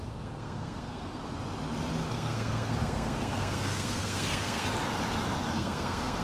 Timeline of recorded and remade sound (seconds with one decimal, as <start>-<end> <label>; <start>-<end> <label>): 0.0-1.2 remade; 1.2-2.1 recorded; 2.1-4.7 remade; 4.7-5.4 recorded; 5.4-6.2 remade